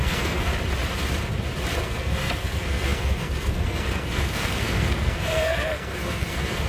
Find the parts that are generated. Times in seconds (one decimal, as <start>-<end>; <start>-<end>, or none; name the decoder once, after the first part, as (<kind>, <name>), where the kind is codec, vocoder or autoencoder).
0.0-0.5 (codec, SNAC); 1.8-6.7